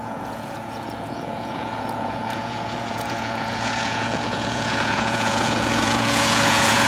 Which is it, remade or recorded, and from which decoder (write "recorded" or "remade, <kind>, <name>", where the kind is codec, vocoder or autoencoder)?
remade, vocoder, Vocos